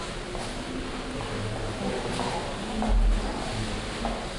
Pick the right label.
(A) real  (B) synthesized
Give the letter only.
A